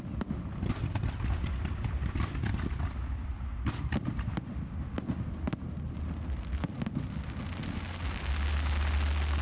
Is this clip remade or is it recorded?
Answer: recorded